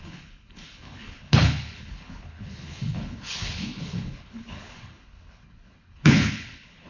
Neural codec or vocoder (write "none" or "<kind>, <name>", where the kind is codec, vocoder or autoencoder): codec, HILCodec